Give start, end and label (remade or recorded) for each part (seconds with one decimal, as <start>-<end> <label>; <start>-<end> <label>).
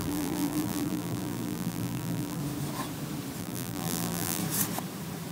0.0-2.4 remade; 2.4-3.4 recorded; 3.4-4.4 remade; 4.4-5.3 recorded